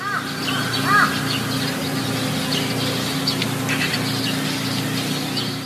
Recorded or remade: recorded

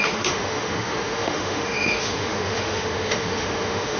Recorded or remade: remade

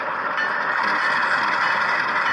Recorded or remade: recorded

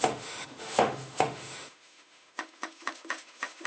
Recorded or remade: remade